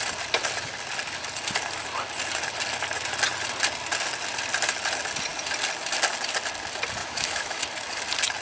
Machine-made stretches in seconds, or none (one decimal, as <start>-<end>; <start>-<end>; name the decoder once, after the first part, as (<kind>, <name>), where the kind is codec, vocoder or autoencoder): 7.0-7.6 (autoencoder, DAC-VAE)